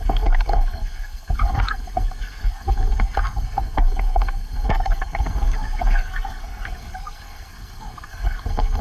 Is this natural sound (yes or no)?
no